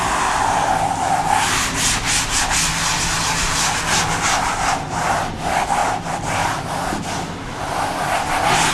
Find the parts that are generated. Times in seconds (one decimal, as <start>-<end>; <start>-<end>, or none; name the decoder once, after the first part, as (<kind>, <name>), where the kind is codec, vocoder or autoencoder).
none